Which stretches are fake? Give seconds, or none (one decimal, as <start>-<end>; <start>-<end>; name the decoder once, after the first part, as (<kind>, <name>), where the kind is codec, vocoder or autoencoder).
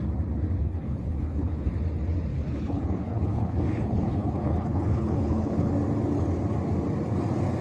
0.6-1.7 (codec, HILCodec); 2.3-5.7